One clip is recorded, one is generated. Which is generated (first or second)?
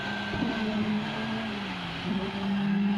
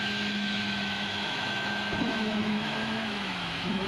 second